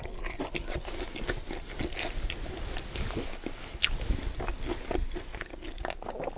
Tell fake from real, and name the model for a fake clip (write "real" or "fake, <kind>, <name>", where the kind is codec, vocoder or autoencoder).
real